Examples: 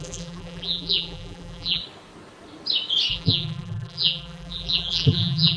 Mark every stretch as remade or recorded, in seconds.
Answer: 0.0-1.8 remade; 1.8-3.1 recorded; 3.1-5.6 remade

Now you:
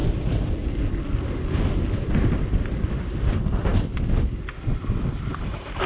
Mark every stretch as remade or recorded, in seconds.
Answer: 0.0-5.9 recorded

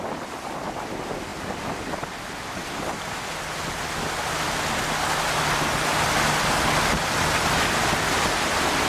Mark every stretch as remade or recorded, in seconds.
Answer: 0.0-8.9 recorded

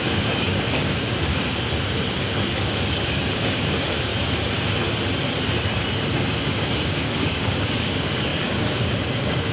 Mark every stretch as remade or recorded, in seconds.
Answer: 0.0-1.3 remade; 1.3-2.5 recorded; 2.5-4.1 remade; 4.1-6.4 recorded; 6.4-9.5 remade

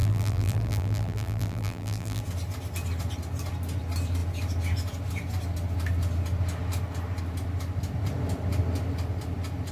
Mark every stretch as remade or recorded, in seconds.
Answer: 0.0-2.2 remade; 2.2-9.7 recorded